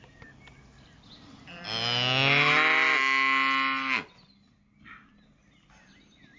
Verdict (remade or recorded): recorded